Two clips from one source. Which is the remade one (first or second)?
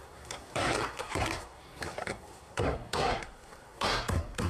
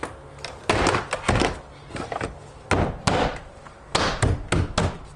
first